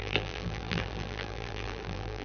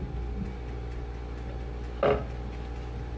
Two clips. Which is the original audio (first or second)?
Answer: second